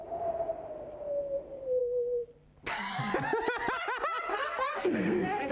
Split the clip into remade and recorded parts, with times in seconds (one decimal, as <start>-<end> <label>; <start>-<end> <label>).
0.0-4.3 recorded; 4.3-5.5 remade